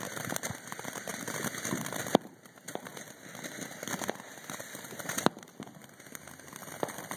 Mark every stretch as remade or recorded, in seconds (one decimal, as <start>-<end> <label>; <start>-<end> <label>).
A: 0.0-7.2 recorded